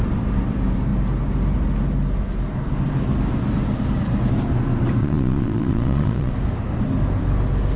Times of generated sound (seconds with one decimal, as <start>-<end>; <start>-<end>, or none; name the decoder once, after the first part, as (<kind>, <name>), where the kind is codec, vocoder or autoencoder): 5.0-6.3 (vocoder, Vocos)